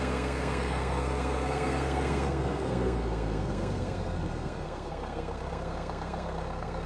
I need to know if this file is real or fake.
fake